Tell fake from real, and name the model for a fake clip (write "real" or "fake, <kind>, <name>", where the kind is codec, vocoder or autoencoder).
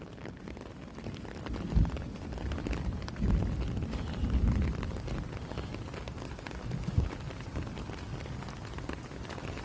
real